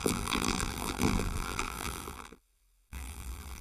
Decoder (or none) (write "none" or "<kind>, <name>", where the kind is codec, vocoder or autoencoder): vocoder, BigVGAN v2